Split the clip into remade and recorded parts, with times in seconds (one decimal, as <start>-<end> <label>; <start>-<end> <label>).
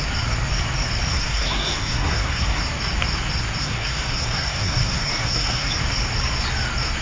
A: 0.0-1.1 recorded; 1.1-2.6 remade; 2.6-3.6 recorded; 3.6-5.7 remade; 5.7-7.0 recorded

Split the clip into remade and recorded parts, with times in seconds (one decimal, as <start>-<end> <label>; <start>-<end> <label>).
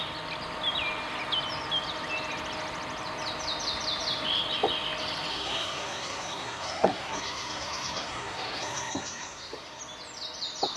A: 0.0-5.3 recorded; 5.3-9.8 remade; 9.8-10.8 recorded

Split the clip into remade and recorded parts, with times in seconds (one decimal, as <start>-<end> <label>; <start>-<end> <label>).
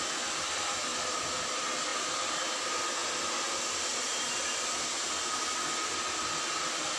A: 0.0-7.0 recorded